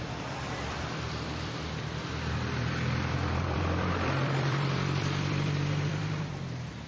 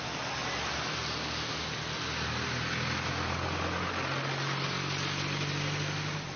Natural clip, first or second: second